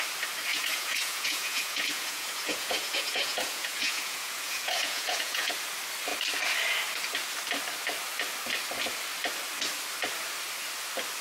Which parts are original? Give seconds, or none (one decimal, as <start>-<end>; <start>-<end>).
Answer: 0.0-0.5; 5.5-11.2